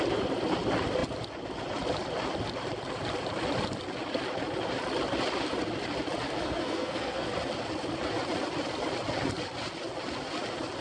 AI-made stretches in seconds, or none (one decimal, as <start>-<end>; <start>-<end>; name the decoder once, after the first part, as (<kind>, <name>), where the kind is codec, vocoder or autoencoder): 6.4-7.3 (codec, SNAC)